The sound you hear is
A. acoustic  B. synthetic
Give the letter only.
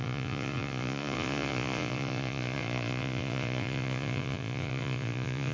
B